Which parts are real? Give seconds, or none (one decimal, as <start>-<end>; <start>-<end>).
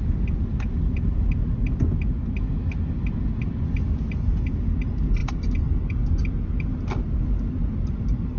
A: 0.0-8.4